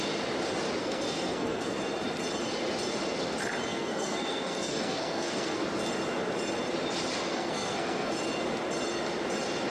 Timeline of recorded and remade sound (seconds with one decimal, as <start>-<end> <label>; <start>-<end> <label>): 0.0-0.8 recorded; 0.8-1.8 remade; 1.8-3.7 recorded; 3.7-5.6 remade; 5.6-7.3 recorded; 7.3-8.1 remade; 8.1-9.7 recorded